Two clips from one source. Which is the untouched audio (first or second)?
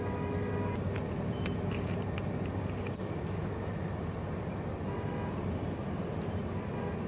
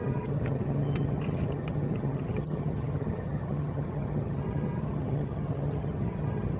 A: first